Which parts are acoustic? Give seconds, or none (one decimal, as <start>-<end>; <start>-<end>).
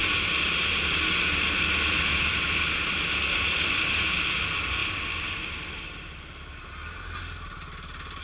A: 0.0-8.2